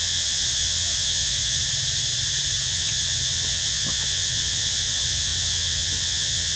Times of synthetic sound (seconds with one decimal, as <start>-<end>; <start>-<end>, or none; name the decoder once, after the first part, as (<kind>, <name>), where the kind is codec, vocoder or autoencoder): 0.0-1.6 (vocoder, WaveNeXt); 2.6-6.6